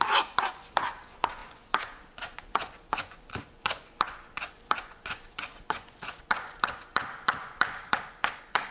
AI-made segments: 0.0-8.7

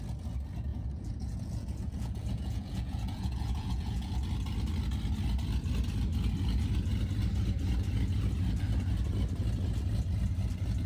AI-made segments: 0.7-4.1

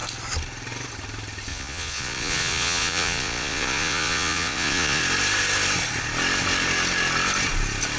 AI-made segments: 1.5-5.0

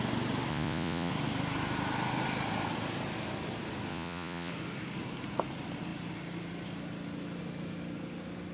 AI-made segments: 0.5-1.1; 3.9-4.5

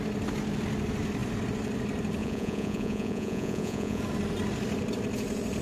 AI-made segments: 2.2-4.0

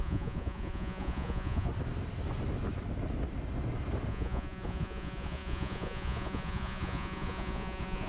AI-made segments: 0.0-1.7; 4.1-8.1